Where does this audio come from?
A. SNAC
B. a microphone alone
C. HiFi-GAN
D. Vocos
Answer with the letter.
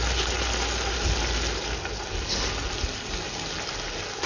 B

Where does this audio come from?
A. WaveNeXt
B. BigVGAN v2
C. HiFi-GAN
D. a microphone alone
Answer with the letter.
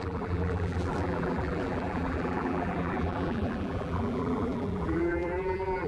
B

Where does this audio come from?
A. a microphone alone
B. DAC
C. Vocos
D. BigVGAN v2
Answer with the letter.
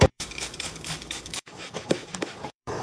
B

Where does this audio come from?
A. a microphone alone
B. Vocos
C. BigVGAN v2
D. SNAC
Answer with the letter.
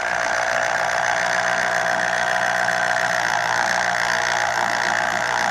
A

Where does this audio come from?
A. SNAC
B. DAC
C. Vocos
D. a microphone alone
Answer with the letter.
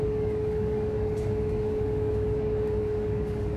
B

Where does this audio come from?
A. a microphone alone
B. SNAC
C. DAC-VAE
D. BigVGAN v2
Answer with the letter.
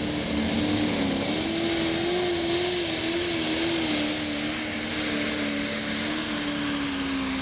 A